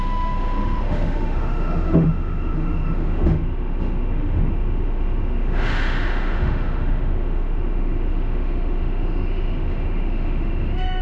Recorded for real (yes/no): no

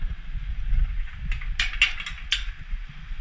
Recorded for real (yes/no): yes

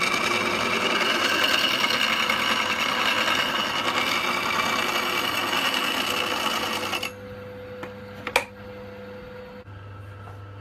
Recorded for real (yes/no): yes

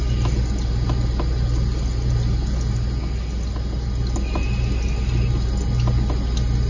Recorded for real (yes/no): yes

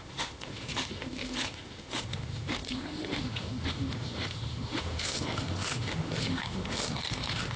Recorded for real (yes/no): no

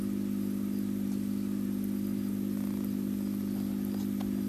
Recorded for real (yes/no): yes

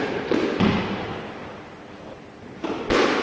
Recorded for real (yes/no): yes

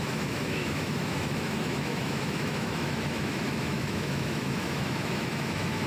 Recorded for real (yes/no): no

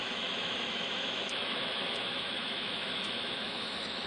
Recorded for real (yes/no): no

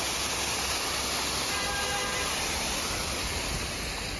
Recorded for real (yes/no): yes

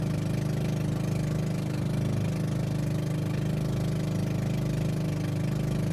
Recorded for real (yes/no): yes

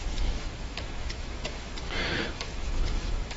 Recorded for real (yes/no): no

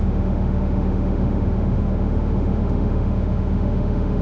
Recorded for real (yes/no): no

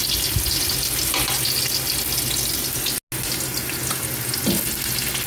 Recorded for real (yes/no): yes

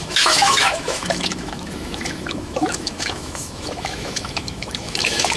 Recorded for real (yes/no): no